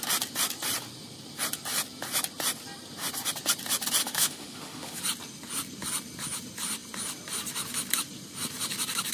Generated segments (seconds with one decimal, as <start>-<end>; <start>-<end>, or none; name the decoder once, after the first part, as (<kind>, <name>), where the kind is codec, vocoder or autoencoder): 4.0-5.0 (autoencoder, DAC-VAE)